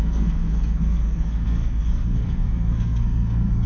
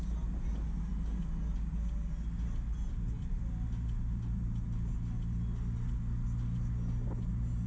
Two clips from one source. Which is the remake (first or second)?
first